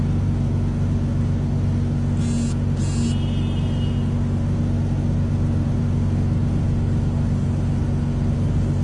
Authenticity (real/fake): real